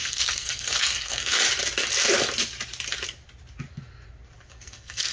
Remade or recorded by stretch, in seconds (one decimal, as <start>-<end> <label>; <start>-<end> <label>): 0.0-1.4 remade; 1.4-4.5 recorded; 4.5-5.1 remade